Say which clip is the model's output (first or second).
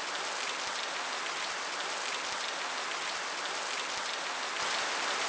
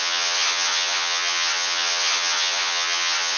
second